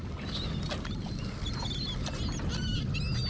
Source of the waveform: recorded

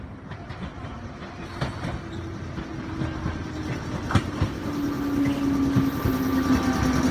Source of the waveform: recorded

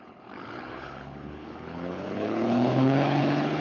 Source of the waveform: remade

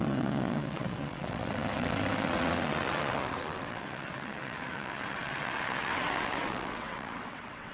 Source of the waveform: remade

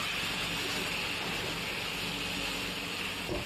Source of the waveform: recorded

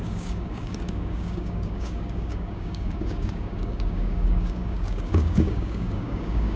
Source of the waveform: remade